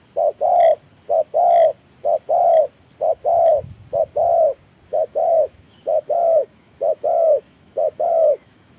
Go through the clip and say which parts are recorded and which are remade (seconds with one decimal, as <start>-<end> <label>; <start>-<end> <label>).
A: 0.0-4.9 recorded; 4.9-8.8 remade